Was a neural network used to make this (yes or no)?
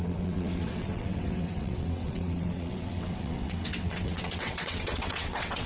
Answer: yes